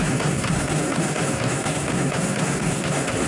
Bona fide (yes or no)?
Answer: no